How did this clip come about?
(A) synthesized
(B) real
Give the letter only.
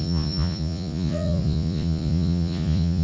A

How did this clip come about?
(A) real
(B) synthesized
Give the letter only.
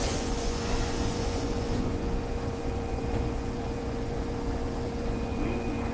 B